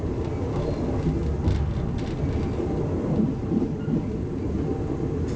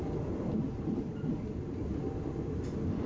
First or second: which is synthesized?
second